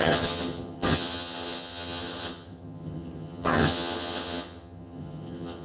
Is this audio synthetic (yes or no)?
yes